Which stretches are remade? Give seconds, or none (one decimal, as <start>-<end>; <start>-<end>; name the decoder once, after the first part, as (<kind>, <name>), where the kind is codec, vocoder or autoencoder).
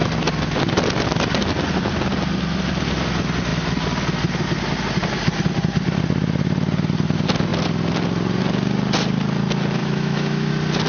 9.8-10.5 (autoencoder, DAC-VAE)